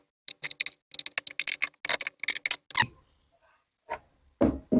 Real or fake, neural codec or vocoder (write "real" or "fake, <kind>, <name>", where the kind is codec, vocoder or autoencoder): real